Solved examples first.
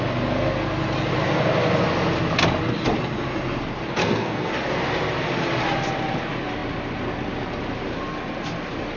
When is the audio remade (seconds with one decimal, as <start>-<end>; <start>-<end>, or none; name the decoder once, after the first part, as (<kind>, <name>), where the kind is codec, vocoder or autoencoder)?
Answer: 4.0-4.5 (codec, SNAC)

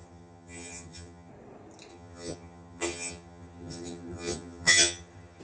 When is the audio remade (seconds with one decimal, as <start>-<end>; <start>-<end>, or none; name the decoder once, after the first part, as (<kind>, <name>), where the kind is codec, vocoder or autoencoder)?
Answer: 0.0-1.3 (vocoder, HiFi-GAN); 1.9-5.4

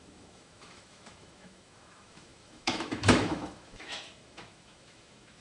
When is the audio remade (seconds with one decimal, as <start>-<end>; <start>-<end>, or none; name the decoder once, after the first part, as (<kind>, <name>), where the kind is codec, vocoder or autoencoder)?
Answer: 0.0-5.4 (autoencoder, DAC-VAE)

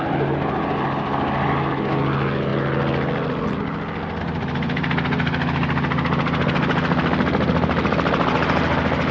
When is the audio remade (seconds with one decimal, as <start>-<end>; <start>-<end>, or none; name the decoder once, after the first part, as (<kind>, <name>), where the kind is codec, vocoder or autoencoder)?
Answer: none

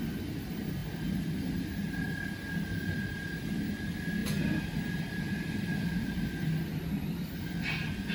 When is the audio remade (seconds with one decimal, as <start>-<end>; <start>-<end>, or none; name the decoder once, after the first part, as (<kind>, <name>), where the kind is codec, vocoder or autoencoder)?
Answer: 4.2-6.3 (vocoder, BigVGAN v2)